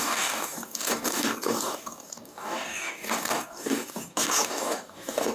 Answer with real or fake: fake